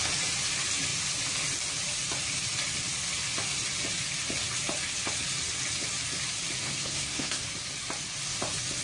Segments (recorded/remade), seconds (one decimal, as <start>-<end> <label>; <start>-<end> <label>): 0.0-6.6 recorded; 6.6-7.4 remade; 7.4-8.8 recorded